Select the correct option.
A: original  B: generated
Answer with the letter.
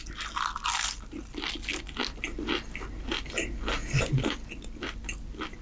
A